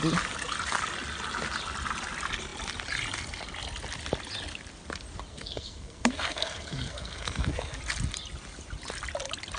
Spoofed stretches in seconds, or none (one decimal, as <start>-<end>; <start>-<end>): 5.3-7.8